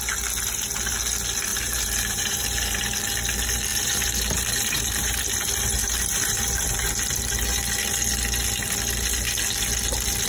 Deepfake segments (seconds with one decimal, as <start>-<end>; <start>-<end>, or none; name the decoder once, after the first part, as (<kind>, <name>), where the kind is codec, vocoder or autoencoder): 1.5-2.8 (vocoder, BigVGAN v2); 3.7-5.2; 5.8-6.5

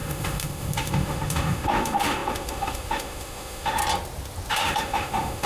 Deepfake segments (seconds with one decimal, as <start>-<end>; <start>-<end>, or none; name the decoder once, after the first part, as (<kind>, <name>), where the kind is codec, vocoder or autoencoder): 0.0-3.8 (autoencoder, DAC-VAE); 4.5-5.5

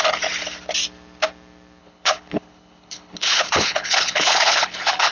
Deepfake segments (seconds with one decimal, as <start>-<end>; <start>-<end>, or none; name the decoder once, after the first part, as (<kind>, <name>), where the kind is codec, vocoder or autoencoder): 1.8-5.1 (codec, HILCodec)

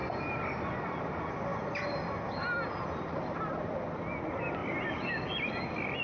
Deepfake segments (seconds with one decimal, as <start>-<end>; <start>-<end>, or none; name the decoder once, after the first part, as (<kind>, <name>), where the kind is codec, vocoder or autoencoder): none

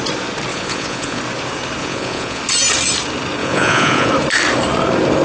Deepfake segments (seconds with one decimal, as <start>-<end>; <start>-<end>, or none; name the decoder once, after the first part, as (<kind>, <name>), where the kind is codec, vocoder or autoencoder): 0.5-1.2 (vocoder, Vocos); 1.8-2.4; 3.4-4.1

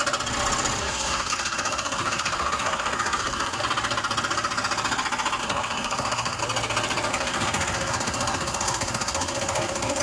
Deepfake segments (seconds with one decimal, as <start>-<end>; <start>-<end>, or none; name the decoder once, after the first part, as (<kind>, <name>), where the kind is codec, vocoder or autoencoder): 0.8-3.6 (codec, SNAC); 5.4-6.4; 7.1-10.0

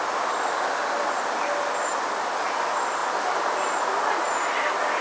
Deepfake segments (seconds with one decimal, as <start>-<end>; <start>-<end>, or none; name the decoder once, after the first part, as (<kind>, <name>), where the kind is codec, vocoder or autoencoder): none